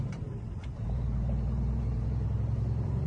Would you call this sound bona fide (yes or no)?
no